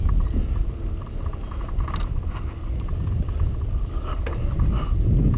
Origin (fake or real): real